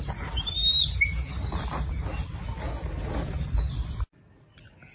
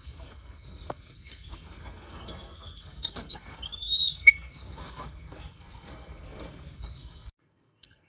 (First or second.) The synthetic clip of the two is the second